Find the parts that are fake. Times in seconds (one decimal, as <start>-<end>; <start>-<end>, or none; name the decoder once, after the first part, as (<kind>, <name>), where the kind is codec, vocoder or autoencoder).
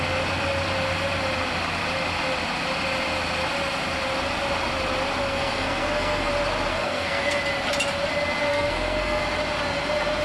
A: 5.2-6.3 (codec, SNAC); 6.7-7.4; 8.5-9.2